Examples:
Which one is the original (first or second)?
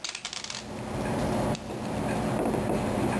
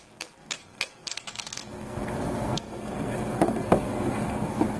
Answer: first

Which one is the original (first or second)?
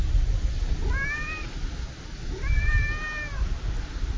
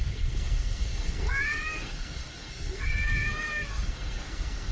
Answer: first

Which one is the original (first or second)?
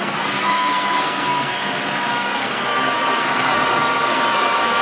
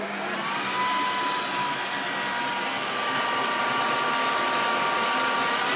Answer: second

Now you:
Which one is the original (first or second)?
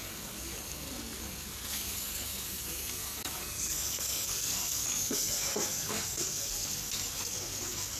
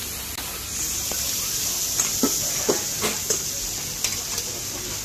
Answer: second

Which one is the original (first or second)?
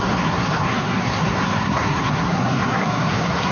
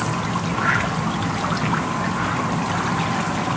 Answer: second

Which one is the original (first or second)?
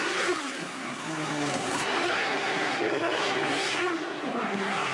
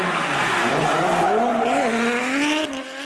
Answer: second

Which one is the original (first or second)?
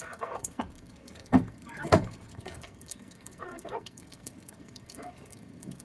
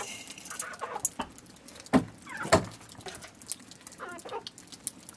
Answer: second